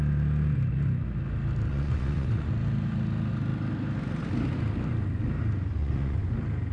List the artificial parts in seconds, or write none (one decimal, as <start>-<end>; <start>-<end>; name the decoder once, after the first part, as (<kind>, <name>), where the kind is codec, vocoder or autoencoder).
1.7-2.5 (vocoder, Vocos); 5.8-6.3